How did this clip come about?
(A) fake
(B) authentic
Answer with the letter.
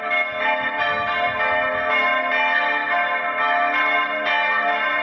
B